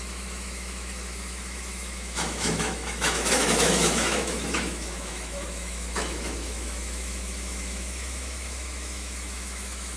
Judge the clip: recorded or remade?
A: remade